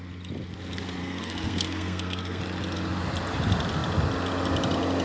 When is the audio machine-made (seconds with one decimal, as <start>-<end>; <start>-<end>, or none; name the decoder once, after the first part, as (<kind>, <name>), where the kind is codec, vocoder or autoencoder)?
1.0-2.4 (codec, SNAC)